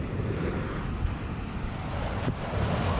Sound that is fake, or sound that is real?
real